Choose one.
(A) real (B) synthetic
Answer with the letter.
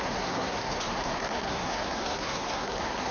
B